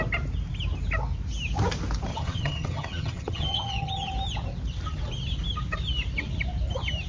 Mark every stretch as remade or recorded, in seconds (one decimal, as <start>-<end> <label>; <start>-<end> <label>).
0.0-2.1 recorded; 2.1-4.1 remade; 4.1-7.1 recorded